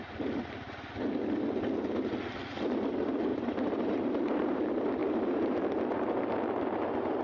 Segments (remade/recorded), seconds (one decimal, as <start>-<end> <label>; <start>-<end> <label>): 0.0-0.7 remade; 0.7-3.3 recorded; 3.3-4.6 remade; 4.6-5.0 recorded; 5.0-5.6 remade; 5.6-7.2 recorded